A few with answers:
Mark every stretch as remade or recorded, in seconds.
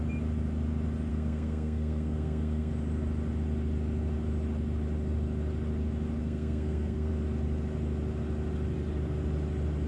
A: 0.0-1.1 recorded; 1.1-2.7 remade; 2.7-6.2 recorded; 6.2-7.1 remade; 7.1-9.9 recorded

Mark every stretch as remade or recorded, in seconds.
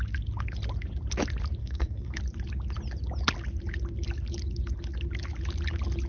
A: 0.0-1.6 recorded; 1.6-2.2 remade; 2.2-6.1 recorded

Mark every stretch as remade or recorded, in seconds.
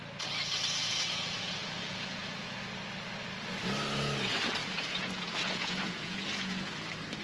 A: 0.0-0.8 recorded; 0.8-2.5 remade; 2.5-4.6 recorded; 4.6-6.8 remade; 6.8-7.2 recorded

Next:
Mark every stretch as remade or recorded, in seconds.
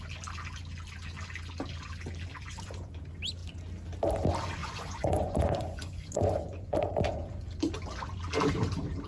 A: 0.0-2.3 recorded; 2.3-3.0 remade; 3.0-4.6 recorded; 4.6-6.9 remade; 6.9-9.1 recorded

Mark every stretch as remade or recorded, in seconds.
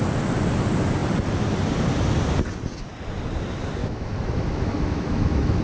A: 0.0-3.8 recorded; 3.8-5.6 remade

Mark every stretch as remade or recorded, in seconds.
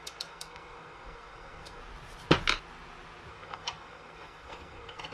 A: 0.0-1.8 remade; 1.8-3.3 recorded; 3.3-5.1 remade